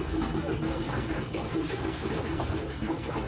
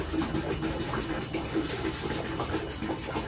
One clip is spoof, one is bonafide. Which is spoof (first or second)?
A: first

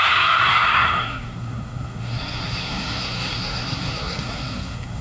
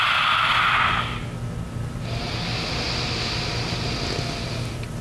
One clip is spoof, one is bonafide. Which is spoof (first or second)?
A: first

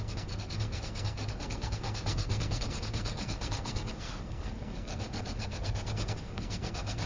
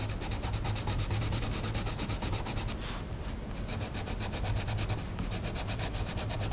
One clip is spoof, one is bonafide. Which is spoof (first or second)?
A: first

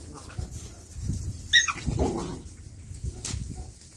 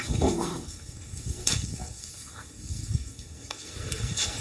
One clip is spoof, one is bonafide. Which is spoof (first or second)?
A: second